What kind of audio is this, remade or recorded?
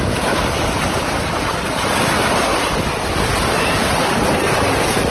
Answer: recorded